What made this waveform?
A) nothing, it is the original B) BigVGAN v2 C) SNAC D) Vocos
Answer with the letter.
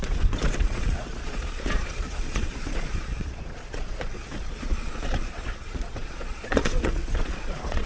D